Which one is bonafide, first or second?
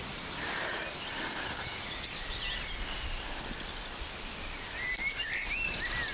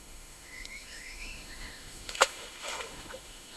first